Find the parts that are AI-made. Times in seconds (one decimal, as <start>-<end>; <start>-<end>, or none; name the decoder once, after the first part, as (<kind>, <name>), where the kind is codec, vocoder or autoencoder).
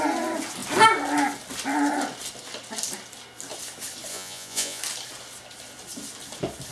4.1-4.8 (vocoder, Vocos)